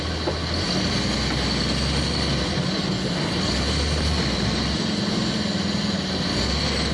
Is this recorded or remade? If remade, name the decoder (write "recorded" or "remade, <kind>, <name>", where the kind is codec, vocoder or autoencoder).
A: recorded